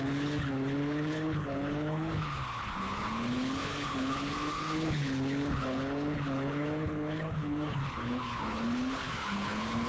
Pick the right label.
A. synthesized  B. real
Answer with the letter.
A